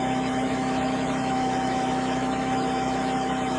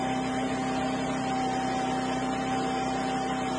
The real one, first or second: second